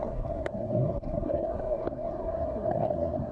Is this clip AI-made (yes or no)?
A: yes